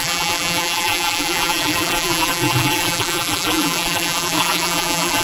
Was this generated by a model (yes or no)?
yes